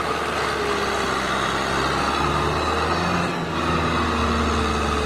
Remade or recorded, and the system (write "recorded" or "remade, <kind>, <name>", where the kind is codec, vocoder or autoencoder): recorded